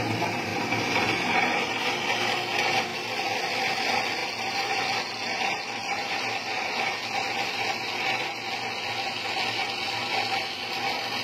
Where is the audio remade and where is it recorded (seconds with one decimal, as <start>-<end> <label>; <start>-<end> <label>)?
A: 0.0-4.2 recorded; 4.2-5.0 remade; 5.0-5.8 recorded; 5.8-8.2 remade; 8.2-11.2 recorded